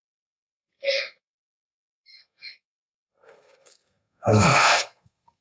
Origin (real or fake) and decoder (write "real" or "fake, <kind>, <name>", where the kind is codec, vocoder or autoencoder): fake, codec, SNAC